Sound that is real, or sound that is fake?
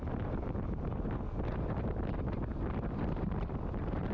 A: real